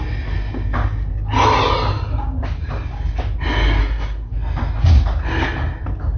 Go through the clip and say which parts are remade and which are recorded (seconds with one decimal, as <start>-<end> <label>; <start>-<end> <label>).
0.0-3.8 recorded; 3.8-4.3 remade; 4.3-6.2 recorded